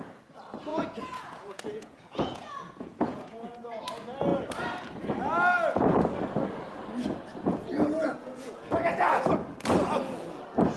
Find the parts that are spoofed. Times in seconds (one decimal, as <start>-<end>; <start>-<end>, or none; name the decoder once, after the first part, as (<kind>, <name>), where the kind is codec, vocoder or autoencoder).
0.7-3.8 (vocoder, Vocos); 7.3-9.2